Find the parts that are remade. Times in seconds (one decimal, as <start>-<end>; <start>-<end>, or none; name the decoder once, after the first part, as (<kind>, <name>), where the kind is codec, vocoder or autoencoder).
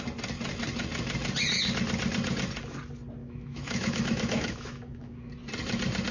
3.2-5.3 (autoencoder, DAC-VAE)